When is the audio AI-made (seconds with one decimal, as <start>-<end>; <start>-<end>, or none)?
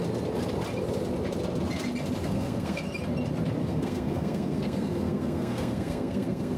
2.2-2.9; 3.6-6.6